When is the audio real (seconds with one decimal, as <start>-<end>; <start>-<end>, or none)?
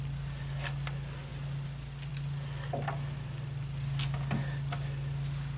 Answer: 0.0-5.6